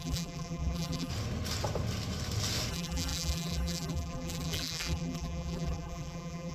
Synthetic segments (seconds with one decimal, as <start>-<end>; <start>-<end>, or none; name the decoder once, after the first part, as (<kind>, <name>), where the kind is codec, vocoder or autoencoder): 0.0-1.1 (vocoder, BigVGAN v2); 2.7-6.5